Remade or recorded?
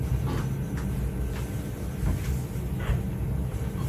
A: recorded